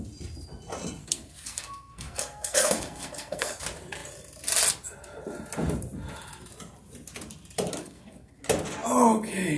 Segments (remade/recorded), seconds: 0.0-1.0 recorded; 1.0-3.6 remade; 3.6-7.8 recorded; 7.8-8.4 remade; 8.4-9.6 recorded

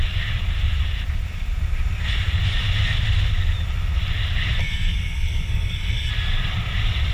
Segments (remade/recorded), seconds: 0.0-4.6 recorded; 4.6-6.1 remade; 6.1-7.1 recorded

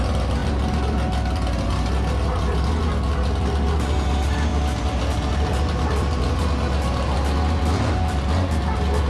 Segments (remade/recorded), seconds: 0.0-9.1 recorded

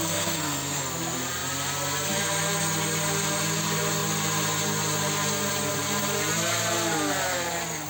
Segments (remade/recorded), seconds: 0.0-0.8 remade; 0.8-7.9 recorded

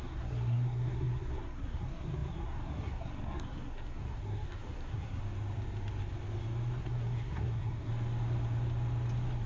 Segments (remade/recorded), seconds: 0.0-5.2 remade; 5.2-6.8 recorded; 6.8-7.9 remade; 7.9-9.5 recorded

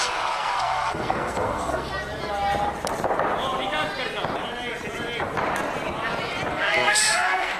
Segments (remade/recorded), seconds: 0.0-1.9 remade; 1.9-6.5 recorded; 6.5-7.6 remade

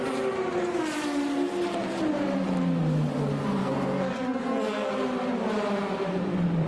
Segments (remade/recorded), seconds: 0.0-3.6 recorded; 3.6-4.9 remade; 4.9-6.7 recorded